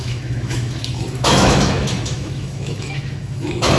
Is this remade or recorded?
remade